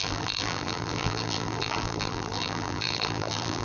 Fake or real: fake